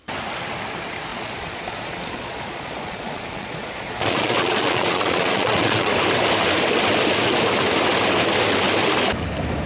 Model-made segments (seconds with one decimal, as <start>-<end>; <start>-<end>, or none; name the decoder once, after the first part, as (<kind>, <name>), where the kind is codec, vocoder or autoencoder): 1.1-5.9 (vocoder, Vocos)